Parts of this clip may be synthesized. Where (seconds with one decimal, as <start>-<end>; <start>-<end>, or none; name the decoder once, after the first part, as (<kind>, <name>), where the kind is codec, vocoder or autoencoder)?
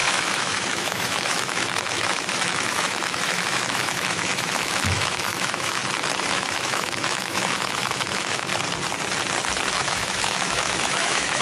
0.0-5.8 (autoencoder, DAC-VAE); 6.3-8.5; 9.7-11.4